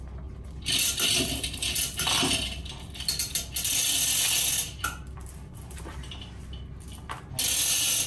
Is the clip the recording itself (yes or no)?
yes